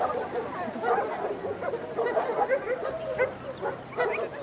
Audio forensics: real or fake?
real